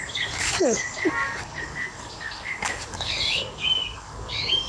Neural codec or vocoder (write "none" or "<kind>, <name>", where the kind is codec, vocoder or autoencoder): codec, DAC